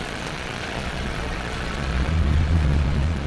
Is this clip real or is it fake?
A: fake